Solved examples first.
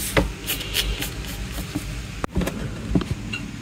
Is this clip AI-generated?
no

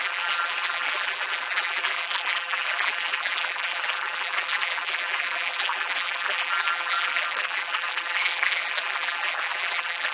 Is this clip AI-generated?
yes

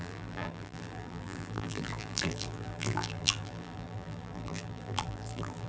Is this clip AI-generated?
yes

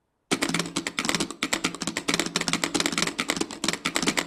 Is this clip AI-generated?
no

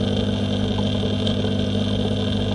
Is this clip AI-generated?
no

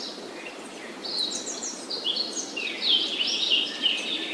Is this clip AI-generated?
no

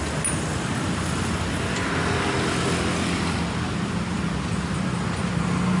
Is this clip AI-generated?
no